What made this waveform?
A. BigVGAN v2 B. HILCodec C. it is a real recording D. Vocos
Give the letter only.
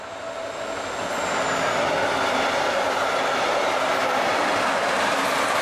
C